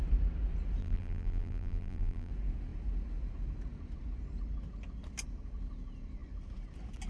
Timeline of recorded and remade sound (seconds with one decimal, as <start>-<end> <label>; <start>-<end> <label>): 0.0-0.8 recorded; 0.8-2.3 remade; 2.3-7.1 recorded